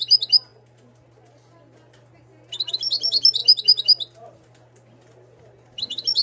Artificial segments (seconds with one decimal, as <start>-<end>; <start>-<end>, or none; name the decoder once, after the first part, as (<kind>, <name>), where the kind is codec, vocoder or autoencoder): none